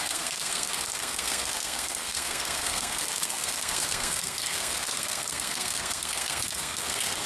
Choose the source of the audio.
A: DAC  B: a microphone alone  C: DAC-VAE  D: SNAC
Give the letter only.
D